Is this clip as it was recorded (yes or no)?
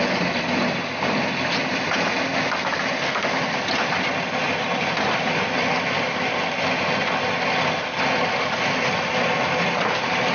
yes